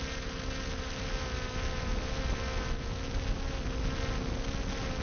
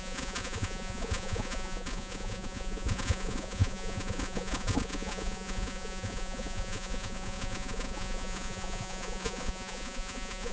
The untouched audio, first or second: first